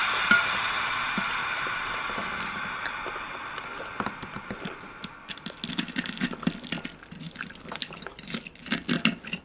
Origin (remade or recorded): recorded